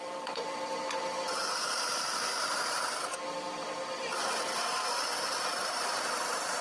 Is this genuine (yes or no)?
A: no